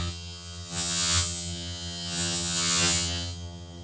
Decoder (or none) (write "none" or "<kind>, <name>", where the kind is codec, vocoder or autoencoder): vocoder, HiFi-GAN